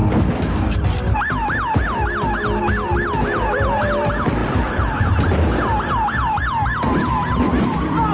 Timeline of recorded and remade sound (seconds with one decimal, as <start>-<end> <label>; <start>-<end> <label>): 0.0-4.4 recorded; 4.4-5.0 remade; 5.0-6.2 recorded; 6.2-7.0 remade; 7.0-8.1 recorded